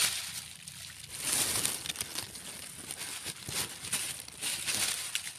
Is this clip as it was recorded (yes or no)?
yes